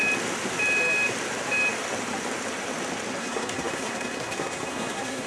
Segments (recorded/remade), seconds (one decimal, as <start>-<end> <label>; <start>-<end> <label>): 0.0-3.2 recorded; 3.2-5.3 remade